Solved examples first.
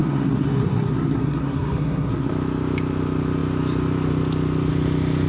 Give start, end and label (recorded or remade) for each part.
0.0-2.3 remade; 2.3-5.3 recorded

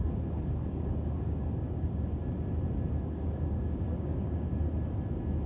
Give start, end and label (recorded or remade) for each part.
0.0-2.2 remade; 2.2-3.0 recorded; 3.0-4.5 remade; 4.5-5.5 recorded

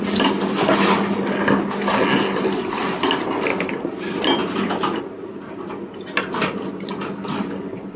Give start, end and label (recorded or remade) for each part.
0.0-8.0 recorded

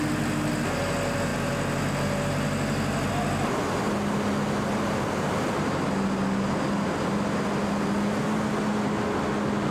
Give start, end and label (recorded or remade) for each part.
0.0-9.7 recorded

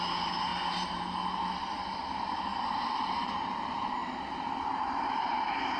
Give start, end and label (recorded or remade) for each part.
0.0-0.5 remade; 0.5-1.7 recorded; 1.7-5.8 remade

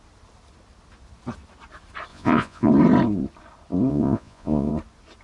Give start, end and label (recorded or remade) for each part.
0.0-2.1 recorded; 2.1-2.7 remade; 2.7-3.9 recorded; 3.9-4.7 remade; 4.7-5.2 recorded

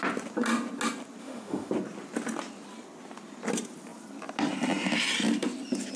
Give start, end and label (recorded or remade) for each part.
0.0-1.2 recorded; 1.2-1.7 remade; 1.7-6.0 recorded